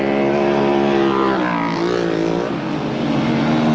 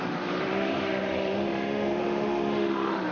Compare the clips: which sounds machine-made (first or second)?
second